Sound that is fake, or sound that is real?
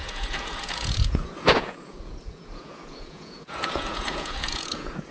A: fake